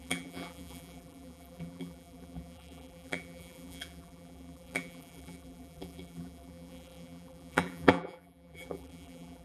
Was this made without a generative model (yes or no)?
no